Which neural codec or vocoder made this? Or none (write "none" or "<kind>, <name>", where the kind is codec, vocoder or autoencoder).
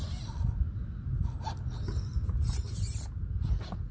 none